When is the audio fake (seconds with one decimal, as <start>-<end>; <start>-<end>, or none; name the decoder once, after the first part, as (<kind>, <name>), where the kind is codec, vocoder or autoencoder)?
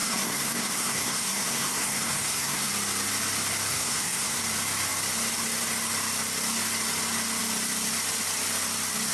0.0-2.7 (codec, SNAC); 3.7-4.4